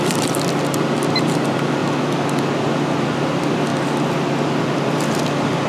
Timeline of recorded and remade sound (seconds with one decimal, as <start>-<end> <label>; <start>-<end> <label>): 0.0-1.8 remade; 1.8-2.8 recorded; 2.8-3.7 remade; 3.7-4.6 recorded; 4.6-5.7 remade